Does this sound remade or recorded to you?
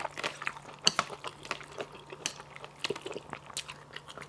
recorded